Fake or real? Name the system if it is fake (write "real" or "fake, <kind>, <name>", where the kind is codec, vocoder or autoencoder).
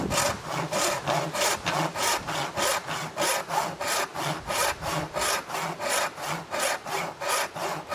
real